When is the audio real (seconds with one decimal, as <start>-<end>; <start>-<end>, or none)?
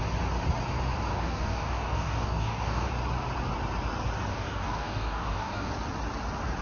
0.0-1.1; 2.9-4.3; 5.7-6.6